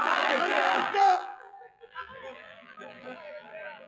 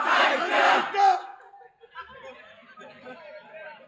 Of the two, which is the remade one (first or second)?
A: first